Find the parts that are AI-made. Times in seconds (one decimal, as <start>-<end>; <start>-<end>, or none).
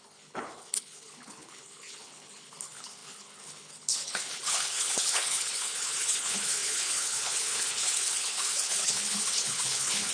0.0-10.1